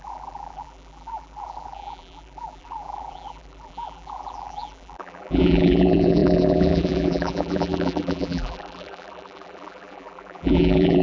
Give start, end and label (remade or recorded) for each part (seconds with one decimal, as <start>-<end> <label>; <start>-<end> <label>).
0.0-11.0 remade